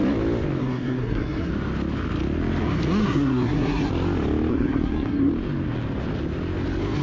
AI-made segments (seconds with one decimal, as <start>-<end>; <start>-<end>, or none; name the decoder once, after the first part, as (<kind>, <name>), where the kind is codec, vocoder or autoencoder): 0.6-1.5 (codec, SNAC); 3.0-3.9; 4.5-5.3